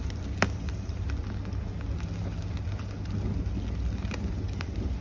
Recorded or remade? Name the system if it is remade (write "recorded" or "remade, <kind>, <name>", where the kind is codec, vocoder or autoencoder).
recorded